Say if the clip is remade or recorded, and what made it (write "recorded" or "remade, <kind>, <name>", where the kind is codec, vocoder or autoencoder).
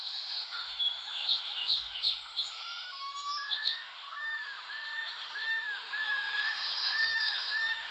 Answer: remade, autoencoder, DAC-VAE